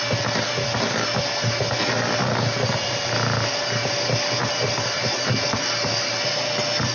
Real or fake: real